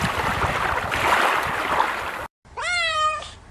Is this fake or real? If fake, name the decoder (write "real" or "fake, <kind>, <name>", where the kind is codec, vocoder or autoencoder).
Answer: fake, vocoder, BigVGAN v2